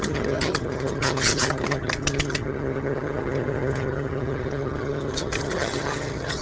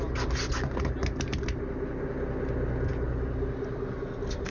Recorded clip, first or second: second